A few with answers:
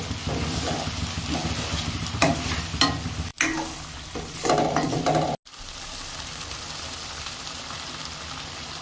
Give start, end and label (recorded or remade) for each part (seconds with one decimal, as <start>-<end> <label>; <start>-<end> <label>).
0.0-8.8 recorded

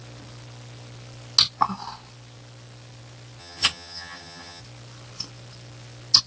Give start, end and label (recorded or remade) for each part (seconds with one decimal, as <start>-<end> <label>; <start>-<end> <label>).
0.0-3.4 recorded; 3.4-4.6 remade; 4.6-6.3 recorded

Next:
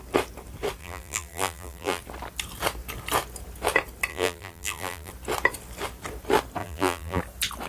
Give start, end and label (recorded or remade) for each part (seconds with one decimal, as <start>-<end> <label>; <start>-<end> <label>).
0.0-0.8 recorded; 0.8-2.0 remade; 2.0-4.1 recorded; 4.1-5.1 remade; 5.1-6.6 recorded; 6.6-7.2 remade; 7.2-7.7 recorded

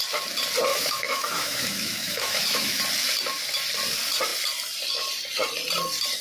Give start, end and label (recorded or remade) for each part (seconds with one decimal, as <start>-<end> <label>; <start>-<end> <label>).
0.0-0.7 recorded; 0.7-2.8 remade; 2.8-6.2 recorded